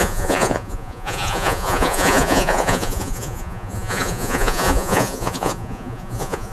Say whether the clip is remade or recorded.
remade